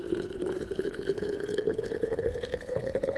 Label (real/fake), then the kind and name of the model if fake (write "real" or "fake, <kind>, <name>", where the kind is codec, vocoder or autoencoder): fake, codec, HILCodec